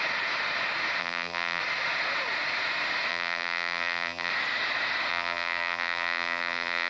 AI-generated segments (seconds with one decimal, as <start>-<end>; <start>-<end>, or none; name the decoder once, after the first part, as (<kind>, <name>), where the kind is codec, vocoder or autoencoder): 1.0-1.6 (vocoder, BigVGAN v2); 3.1-4.3; 5.1-6.9